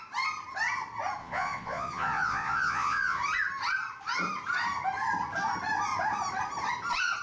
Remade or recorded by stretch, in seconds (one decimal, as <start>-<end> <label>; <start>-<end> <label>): 0.0-1.2 recorded; 1.2-3.2 remade; 3.2-7.2 recorded